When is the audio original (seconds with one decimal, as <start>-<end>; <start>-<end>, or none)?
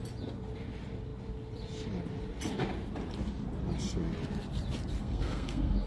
0.0-5.0